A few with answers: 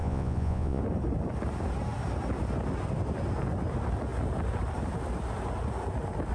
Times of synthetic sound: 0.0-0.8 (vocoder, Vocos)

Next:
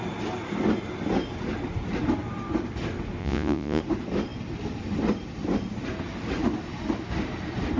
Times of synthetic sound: 3.2-3.8 (vocoder, Vocos)

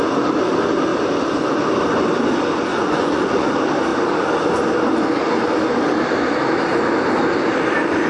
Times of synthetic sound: 2.7-3.5 (vocoder, Vocos)

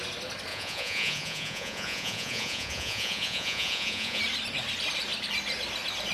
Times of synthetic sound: 0.5-4.2 (vocoder, Vocos)

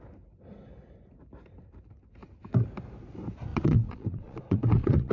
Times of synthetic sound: 3.5-5.1 (vocoder, Vocos)

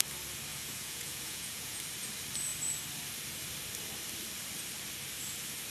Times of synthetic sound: 0.5-1.8 (vocoder, Vocos)